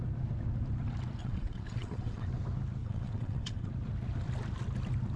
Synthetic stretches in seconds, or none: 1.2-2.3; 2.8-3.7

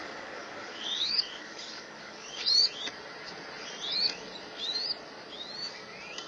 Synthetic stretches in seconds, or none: 0.0-2.4

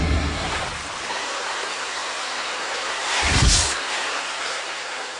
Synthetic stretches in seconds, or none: 0.0-0.6; 1.1-5.2

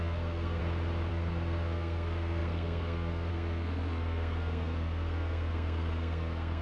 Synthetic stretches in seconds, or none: 0.0-0.6; 1.1-6.6

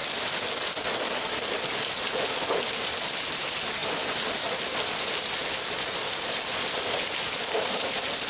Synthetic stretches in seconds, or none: 2.0-8.3

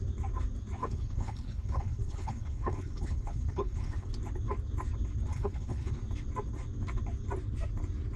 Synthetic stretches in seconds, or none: 0.8-4.1; 5.3-5.9